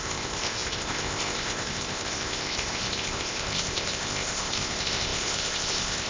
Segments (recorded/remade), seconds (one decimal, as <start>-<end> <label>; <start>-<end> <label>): 0.0-6.1 remade